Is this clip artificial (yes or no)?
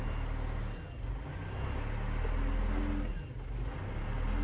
no